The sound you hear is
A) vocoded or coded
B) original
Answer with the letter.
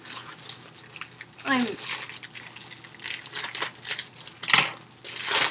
B